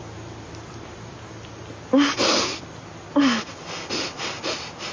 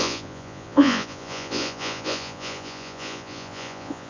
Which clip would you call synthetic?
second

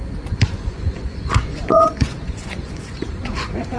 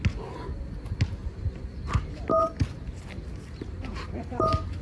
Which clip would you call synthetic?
first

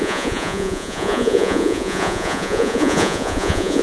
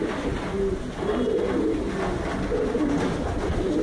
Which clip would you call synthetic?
first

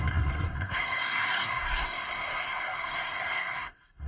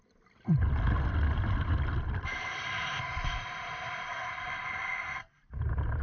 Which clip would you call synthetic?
first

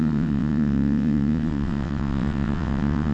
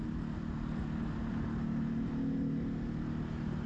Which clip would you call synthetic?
first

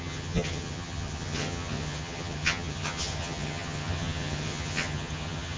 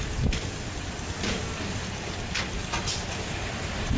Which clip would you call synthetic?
first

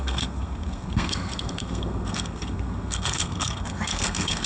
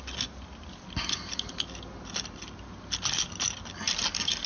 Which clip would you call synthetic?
first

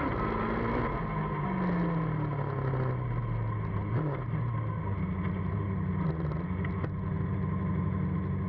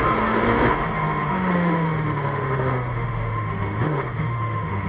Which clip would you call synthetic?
second